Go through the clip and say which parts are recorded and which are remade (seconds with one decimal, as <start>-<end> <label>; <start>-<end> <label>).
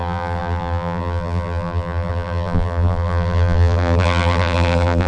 0.0-5.1 remade